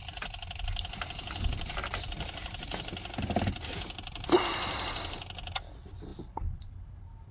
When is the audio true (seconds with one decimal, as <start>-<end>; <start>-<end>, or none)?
4.4-7.3